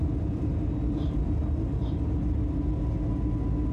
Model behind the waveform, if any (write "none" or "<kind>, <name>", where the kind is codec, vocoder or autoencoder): none